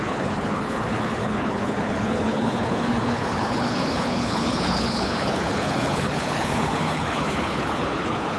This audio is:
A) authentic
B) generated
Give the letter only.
B